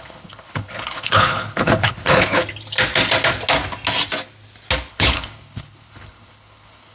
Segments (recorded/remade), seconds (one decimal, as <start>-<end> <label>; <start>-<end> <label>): 0.0-2.4 remade; 2.4-4.9 recorded; 4.9-6.9 remade